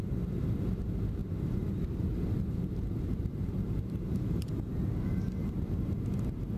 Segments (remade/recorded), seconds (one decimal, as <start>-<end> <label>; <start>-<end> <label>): 0.0-1.2 recorded; 1.2-4.5 remade; 4.5-5.4 recorded; 5.4-6.6 remade